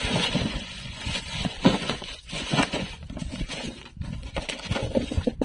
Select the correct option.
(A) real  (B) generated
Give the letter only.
B